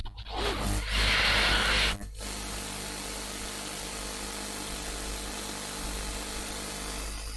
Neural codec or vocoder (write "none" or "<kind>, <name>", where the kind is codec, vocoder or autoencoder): none